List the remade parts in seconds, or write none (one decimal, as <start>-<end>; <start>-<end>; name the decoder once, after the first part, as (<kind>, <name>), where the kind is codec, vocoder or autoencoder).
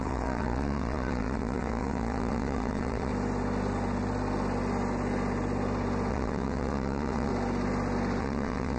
0.0-3.1 (vocoder, WaveNeXt); 6.1-7.3; 8.2-8.8